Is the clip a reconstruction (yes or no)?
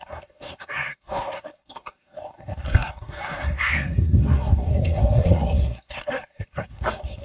yes